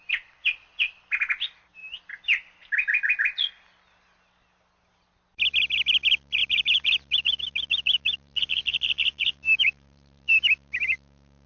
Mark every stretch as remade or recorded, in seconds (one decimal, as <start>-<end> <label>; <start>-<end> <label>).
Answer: 0.0-6.4 recorded; 6.4-10.3 remade; 10.3-11.5 recorded